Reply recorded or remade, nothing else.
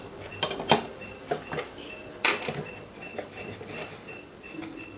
remade